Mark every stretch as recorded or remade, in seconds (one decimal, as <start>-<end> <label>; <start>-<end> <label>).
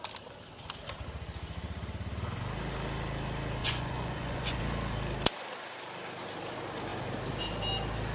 0.0-3.6 recorded; 3.6-4.6 remade; 4.6-8.1 recorded